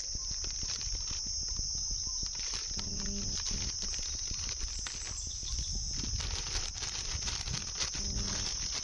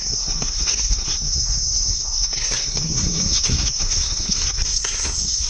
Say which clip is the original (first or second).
first